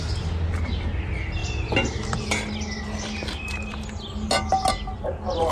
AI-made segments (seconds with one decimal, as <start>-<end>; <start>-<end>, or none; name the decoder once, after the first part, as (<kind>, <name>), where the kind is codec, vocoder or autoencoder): none